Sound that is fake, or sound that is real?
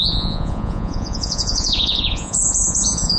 fake